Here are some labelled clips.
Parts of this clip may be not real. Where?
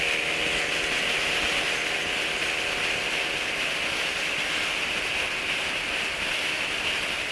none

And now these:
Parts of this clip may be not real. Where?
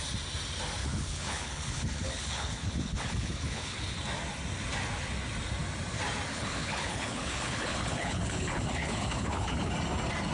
0.8-4.0 (codec, HILCodec); 6.3-9.7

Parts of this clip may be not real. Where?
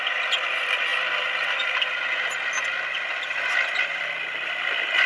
none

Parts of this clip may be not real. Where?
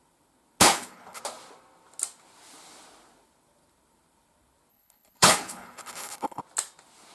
0.7-1.2 (codec, HILCodec); 4.7-6.4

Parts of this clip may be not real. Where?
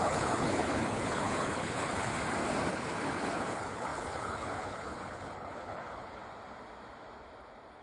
0.0-2.1 (codec, HILCodec); 2.7-6.2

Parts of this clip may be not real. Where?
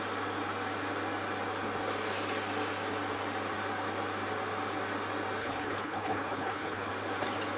5.4-6.9 (codec, HILCodec)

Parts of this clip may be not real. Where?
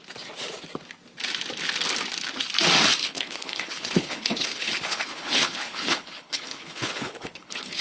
3.0-7.8 (codec, HILCodec)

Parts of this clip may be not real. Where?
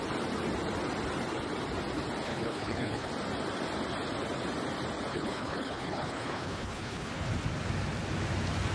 2.3-3.1 (codec, HILCodec); 5.1-7.3